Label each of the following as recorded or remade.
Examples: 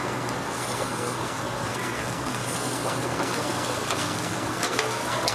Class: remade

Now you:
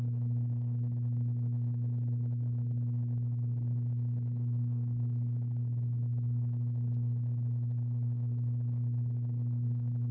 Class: remade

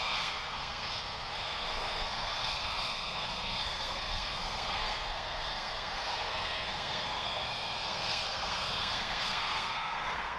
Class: remade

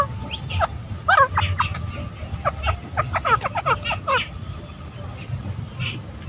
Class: recorded